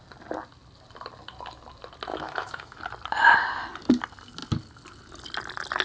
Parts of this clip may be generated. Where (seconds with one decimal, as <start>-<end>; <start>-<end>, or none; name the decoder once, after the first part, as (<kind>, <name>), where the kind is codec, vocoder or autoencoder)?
2.1-2.8 (autoencoder, DAC-VAE)